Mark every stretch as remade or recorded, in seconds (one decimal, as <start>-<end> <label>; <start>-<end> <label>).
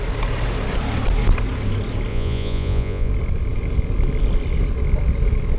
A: 0.0-2.1 recorded; 2.1-3.1 remade; 3.1-5.6 recorded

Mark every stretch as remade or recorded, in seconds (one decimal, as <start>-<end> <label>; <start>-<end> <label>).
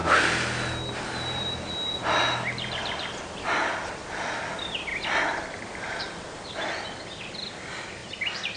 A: 0.0-8.6 recorded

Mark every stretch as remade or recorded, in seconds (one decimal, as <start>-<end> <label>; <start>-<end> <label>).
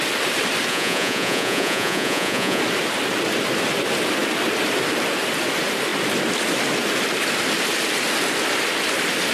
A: 0.0-0.7 recorded; 0.7-2.6 remade; 2.6-9.3 recorded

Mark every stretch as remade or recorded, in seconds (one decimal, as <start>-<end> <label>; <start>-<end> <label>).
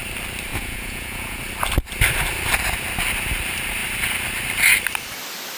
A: 0.0-0.5 recorded; 0.5-1.4 remade; 1.4-5.6 recorded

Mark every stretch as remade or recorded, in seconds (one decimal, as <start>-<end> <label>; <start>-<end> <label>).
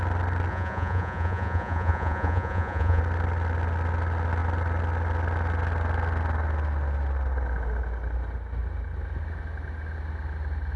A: 0.0-0.5 recorded; 0.5-3.0 remade; 3.0-10.8 recorded